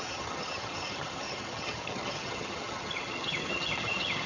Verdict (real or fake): fake